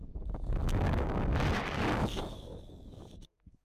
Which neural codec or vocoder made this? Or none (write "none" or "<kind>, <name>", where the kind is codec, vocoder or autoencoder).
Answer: codec, DAC